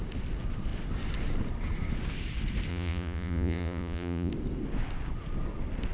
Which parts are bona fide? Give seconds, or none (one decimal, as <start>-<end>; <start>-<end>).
0.0-2.7; 4.3-5.9